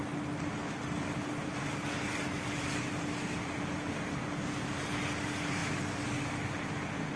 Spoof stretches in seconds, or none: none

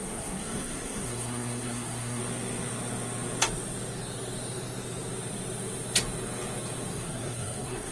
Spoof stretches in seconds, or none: 0.0-2.2 (codec, SNAC); 6.9-7.9

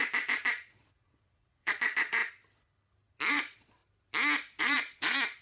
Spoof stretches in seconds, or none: 0.5-2.2 (vocoder, Vocos); 3.3-3.8; 4.6-5.4

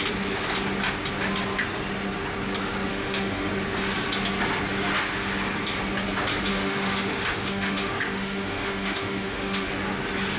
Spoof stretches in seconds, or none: 2.9-3.5 (autoencoder, DAC-VAE); 6.5-9.7

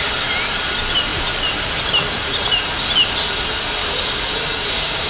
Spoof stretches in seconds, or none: 3.8-5.1 (codec, DAC)

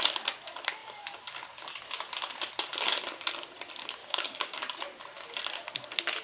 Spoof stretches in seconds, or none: 4.0-4.6 (codec, DAC)

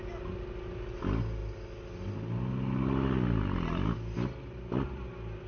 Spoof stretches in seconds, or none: none